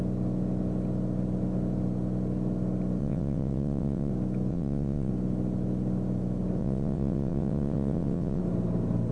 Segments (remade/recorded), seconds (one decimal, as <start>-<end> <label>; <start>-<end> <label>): 0.0-3.0 recorded; 3.0-4.1 remade; 4.1-4.5 recorded; 4.5-5.1 remade; 5.1-6.6 recorded; 6.6-8.4 remade; 8.4-9.1 recorded